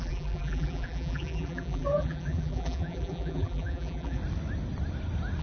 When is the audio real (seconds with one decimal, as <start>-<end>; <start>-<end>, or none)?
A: 4.2-5.4